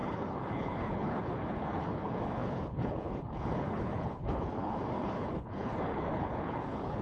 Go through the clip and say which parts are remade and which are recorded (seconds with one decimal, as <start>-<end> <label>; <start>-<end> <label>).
0.0-7.0 remade